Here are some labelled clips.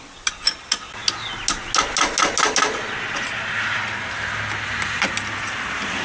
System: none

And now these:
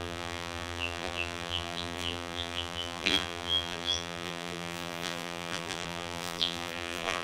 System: vocoder, BigVGAN v2